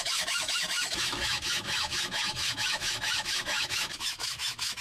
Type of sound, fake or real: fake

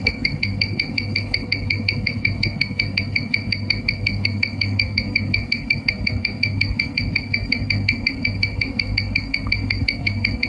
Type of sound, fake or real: fake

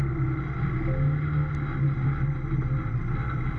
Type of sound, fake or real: real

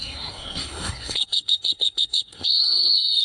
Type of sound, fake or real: fake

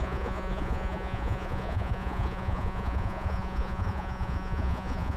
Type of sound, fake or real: fake